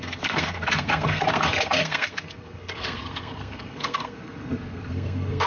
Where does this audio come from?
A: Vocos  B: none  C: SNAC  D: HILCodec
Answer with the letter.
C